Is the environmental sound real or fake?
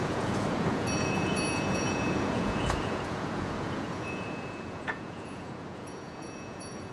fake